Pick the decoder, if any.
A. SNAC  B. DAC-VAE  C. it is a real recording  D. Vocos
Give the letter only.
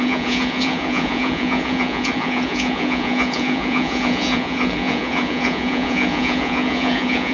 D